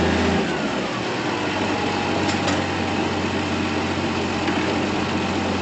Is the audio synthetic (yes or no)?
no